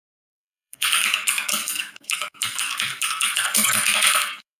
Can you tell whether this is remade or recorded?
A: remade